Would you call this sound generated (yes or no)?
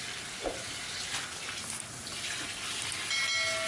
no